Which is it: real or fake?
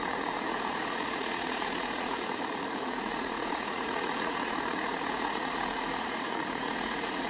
fake